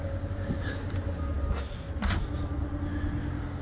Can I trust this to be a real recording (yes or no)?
yes